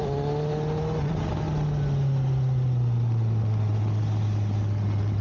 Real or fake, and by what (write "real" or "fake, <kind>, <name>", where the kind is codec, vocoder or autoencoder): real